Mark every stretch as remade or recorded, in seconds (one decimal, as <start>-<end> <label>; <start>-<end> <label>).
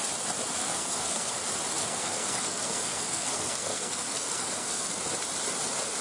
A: 0.0-0.6 recorded; 0.6-1.4 remade; 1.4-1.8 recorded; 1.8-4.9 remade; 4.9-6.0 recorded